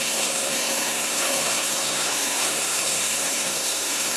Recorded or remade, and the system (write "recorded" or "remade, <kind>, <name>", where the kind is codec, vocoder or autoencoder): remade, codec, SNAC